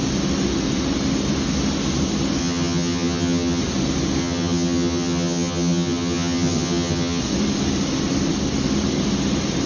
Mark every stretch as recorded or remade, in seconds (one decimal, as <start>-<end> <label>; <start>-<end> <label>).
0.0-2.4 recorded; 2.4-3.6 remade; 3.6-4.2 recorded; 4.2-7.2 remade; 7.2-9.7 recorded